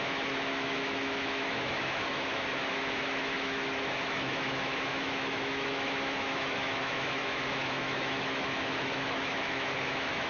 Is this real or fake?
fake